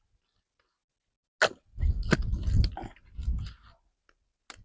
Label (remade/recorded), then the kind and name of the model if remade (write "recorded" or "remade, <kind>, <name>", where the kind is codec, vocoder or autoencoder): recorded